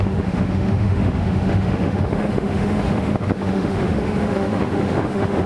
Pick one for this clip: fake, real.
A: fake